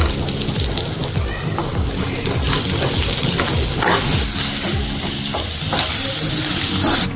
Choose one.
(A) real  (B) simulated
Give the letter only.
A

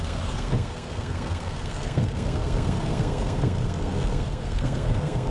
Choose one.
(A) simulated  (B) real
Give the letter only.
A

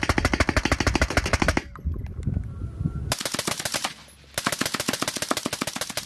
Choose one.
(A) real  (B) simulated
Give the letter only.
A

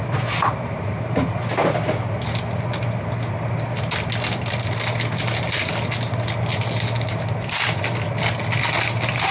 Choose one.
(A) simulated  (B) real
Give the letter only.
B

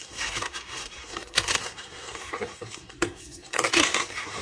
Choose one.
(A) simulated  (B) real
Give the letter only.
A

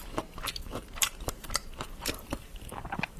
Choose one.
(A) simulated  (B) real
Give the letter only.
A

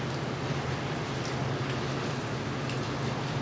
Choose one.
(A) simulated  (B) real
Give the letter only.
B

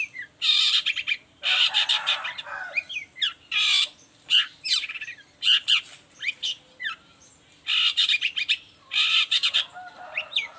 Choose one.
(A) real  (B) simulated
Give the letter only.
A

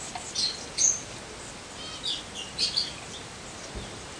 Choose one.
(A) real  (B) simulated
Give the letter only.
A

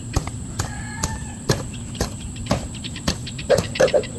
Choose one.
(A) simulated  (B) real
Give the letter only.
A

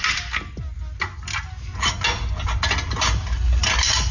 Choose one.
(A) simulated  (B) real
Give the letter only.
B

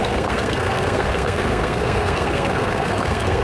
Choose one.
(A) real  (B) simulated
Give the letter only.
B